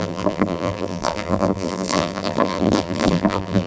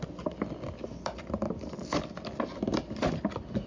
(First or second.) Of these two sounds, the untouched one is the second